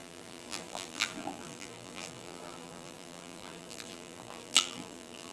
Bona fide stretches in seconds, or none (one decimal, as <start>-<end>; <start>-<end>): none

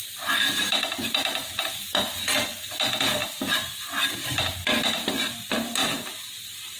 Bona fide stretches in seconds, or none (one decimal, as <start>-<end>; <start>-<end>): 0.0-5.8

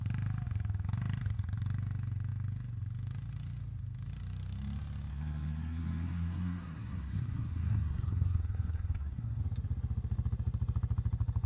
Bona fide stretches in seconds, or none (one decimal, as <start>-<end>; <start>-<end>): 0.0-5.1; 9.4-11.5